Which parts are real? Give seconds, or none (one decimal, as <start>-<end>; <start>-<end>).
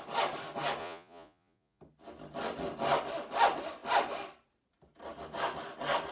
0.0-0.8; 1.8-6.1